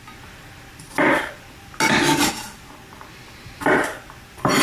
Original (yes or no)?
yes